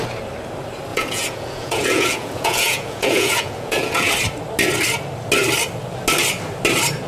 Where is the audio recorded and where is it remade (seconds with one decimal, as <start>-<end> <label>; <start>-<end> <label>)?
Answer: 0.0-0.9 recorded; 0.9-4.1 remade; 4.1-7.1 recorded